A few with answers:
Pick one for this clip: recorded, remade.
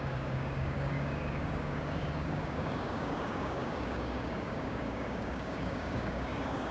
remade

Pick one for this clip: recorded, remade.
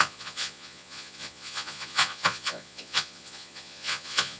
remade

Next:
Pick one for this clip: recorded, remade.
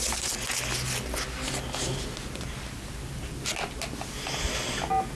recorded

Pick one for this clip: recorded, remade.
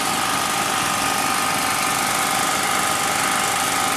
recorded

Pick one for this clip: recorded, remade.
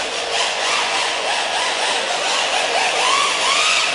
remade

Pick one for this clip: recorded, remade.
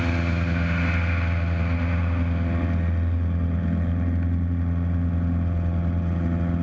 recorded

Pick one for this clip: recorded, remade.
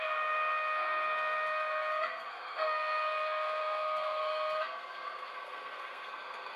remade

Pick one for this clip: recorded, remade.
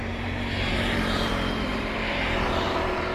remade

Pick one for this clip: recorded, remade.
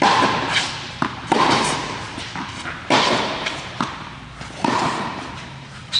remade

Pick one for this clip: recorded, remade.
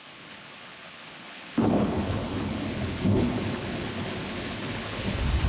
remade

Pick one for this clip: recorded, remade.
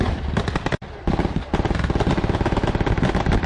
recorded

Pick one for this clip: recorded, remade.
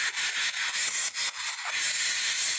recorded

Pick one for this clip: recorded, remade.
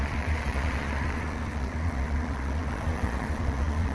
remade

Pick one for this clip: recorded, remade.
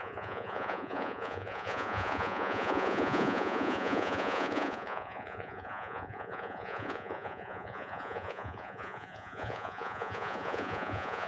remade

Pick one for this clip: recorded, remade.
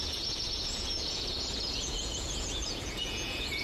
remade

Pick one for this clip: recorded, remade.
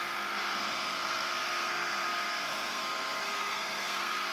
remade